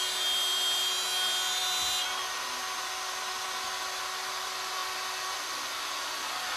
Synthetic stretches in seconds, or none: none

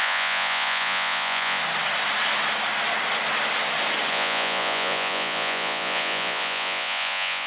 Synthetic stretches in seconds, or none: 0.0-1.6 (vocoder, Vocos); 4.1-7.5

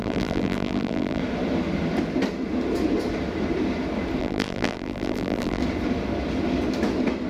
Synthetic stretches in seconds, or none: 0.0-1.2 (vocoder, BigVGAN v2); 4.2-5.6

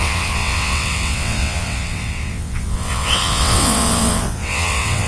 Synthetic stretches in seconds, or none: 0.0-5.1 (vocoder, WaveNeXt)

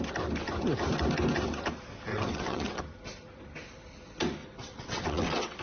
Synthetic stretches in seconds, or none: 2.1-2.8 (vocoder, WaveNeXt); 4.4-5.6

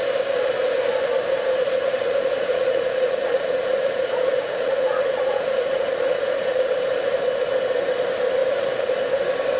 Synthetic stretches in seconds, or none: 1.6-6.7 (vocoder, Vocos); 8.4-8.9

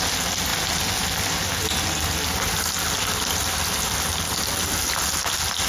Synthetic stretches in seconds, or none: none